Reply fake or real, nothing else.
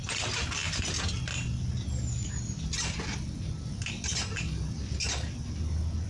real